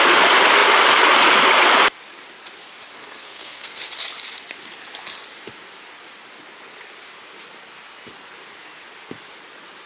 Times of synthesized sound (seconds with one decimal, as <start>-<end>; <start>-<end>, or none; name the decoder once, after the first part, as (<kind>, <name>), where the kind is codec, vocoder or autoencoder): 3.0-3.8 (codec, SNAC)